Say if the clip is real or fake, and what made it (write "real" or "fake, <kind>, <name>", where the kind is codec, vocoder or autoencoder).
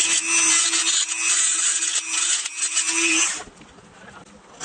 real